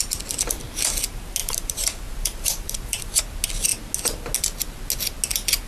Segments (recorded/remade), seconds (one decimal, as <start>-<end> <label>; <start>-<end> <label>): 0.0-1.4 recorded; 1.4-3.2 remade; 3.2-5.7 recorded